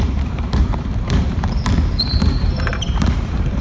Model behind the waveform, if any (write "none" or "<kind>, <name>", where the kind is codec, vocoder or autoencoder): vocoder, BigVGAN v2